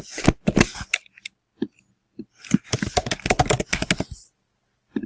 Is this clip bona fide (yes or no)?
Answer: yes